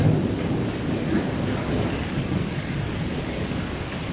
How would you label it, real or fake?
fake